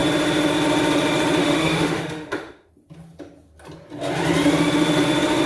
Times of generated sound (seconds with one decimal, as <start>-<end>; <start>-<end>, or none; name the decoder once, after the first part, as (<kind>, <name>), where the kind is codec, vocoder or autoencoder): 1.4-2.7 (autoencoder, DAC-VAE)